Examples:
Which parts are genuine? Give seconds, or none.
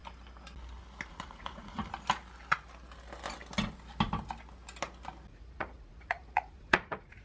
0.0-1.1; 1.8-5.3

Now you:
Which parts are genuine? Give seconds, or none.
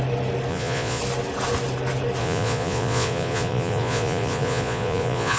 0.0-0.5; 1.0-2.2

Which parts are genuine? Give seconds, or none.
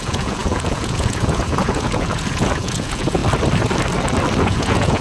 3.2-4.4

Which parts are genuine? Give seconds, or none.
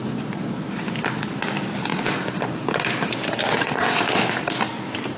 0.0-5.2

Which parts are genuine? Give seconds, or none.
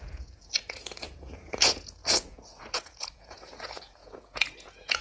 none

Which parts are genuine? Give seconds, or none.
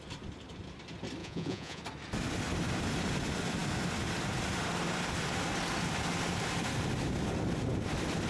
0.0-1.2; 1.8-8.3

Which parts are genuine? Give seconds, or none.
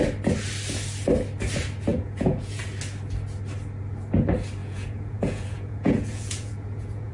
0.0-1.9; 2.6-4.6